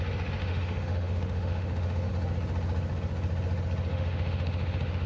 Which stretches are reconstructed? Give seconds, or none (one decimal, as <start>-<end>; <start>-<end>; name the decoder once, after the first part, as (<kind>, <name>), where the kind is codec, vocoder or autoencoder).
0.4-2.1 (autoencoder, DAC-VAE); 3.9-5.1